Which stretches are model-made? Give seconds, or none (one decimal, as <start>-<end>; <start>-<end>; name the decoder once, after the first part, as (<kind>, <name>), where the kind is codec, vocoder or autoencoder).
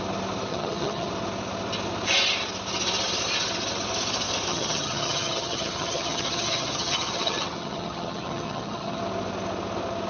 0.5-1.1 (vocoder, HiFi-GAN); 4.5-9.0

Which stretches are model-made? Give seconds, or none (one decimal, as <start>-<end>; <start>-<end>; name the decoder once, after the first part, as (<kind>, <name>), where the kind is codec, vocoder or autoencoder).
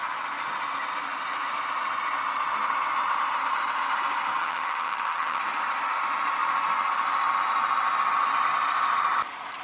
4.4-5.4 (vocoder, HiFi-GAN)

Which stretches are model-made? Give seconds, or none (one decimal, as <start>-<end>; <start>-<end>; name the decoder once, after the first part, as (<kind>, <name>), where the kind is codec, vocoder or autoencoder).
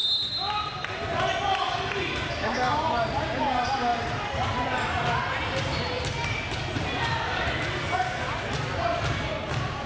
none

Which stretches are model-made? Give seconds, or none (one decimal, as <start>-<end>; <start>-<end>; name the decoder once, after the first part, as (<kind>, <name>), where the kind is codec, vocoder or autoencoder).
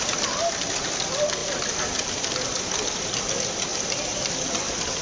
none